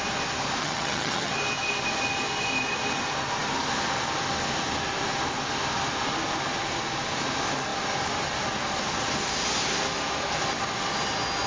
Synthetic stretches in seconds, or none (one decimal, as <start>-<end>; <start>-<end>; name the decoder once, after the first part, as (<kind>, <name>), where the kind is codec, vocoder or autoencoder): 0.6-1.3 (vocoder, HiFi-GAN)